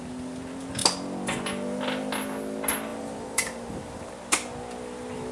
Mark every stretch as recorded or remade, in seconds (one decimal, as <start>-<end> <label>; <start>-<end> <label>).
0.0-2.9 recorded; 2.9-4.1 remade; 4.1-5.3 recorded